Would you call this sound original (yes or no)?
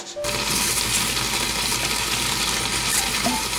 yes